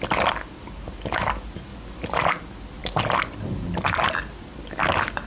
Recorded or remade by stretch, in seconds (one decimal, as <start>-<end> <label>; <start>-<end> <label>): 0.0-5.3 recorded